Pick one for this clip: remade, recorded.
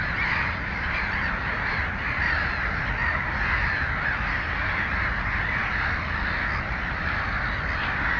recorded